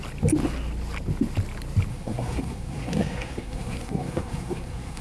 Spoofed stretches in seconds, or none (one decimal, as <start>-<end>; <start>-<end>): 1.9-5.0